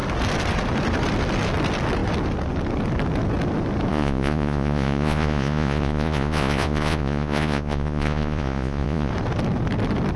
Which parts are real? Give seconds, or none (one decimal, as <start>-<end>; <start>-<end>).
0.0-3.9; 9.1-10.2